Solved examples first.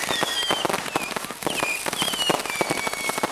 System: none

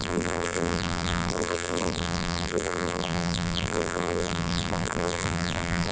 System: vocoder, BigVGAN v2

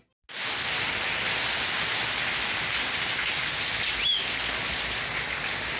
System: none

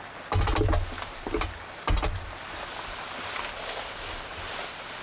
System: none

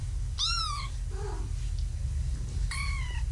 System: vocoder, BigVGAN v2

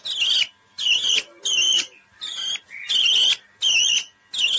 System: none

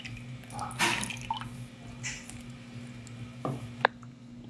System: none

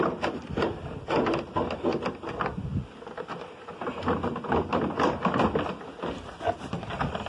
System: none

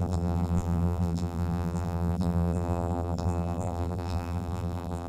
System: vocoder, BigVGAN v2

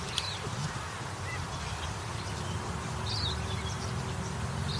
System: vocoder, BigVGAN v2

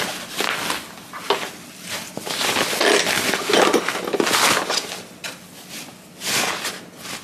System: none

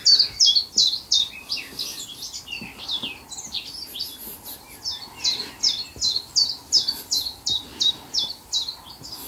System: none